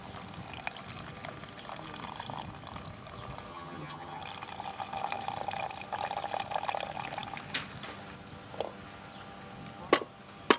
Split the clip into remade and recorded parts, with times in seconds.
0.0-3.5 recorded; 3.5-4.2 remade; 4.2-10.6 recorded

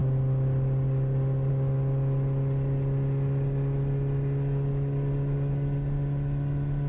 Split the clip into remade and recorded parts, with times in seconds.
0.0-6.9 recorded

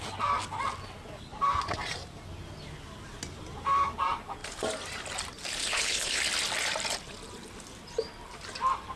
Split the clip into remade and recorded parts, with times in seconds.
0.0-5.6 recorded; 5.6-6.2 remade; 6.2-9.0 recorded